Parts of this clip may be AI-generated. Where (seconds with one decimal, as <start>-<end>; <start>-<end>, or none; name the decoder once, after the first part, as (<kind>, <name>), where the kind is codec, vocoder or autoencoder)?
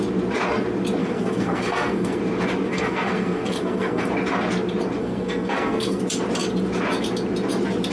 1.0-2.2 (codec, SNAC); 2.7-4.1; 5.0-6.0